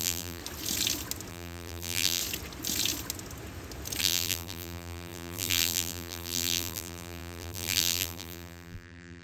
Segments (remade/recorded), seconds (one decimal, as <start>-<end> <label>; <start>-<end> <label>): 0.0-0.4 remade; 0.4-1.3 recorded; 1.3-2.2 remade; 2.2-4.0 recorded; 4.0-9.2 remade